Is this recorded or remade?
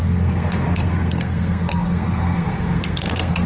remade